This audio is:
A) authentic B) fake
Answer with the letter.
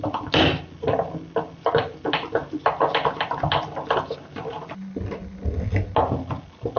A